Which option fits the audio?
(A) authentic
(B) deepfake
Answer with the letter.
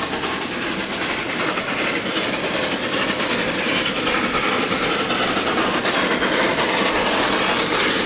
A